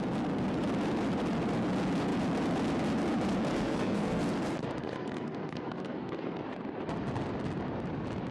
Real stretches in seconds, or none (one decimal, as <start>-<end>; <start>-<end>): 0.0-3.5; 4.2-4.8; 6.4-8.3